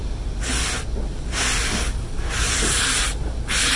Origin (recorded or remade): recorded